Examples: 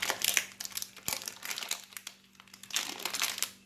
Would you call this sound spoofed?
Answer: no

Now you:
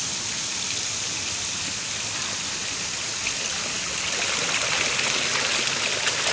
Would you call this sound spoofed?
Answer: no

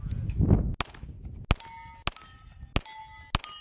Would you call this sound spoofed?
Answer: no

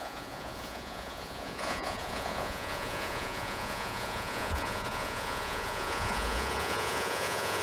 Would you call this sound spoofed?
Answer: yes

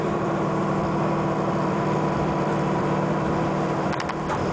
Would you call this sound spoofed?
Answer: yes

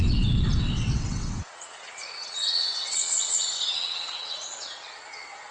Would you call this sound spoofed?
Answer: yes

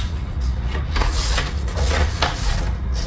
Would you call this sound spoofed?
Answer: yes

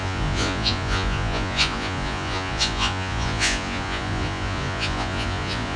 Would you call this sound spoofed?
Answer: yes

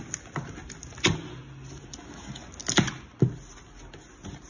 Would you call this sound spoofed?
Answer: no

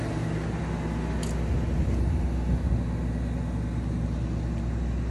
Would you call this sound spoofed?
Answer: no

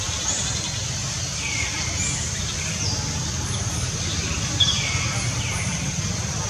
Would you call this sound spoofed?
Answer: no